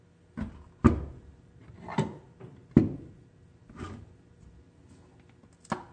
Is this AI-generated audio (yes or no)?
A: no